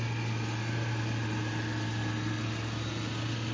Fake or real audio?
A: real